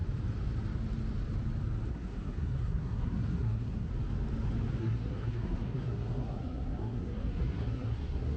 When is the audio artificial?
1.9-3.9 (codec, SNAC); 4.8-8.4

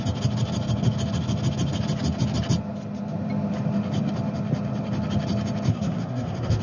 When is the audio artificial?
5.7-6.6 (codec, SNAC)

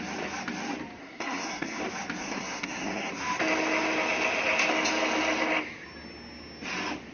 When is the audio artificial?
1.0-1.8 (codec, SNAC); 2.2-3.1

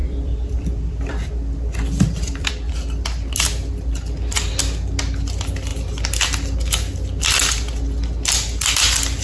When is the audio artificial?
0.0-2.5 (vocoder, BigVGAN v2)

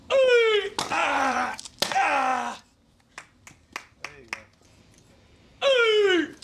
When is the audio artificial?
1.0-1.6 (vocoder, BigVGAN v2)